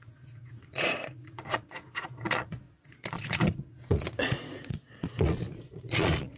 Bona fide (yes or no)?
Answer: no